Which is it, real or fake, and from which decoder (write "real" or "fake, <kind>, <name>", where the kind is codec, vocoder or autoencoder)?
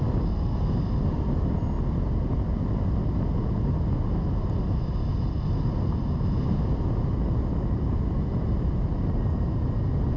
real